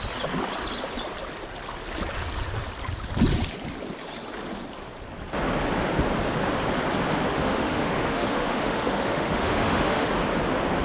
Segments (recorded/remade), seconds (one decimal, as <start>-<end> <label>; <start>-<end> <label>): 0.0-7.3 recorded; 7.3-10.1 remade; 10.1-10.8 recorded